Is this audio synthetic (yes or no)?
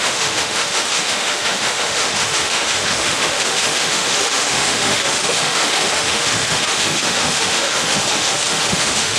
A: yes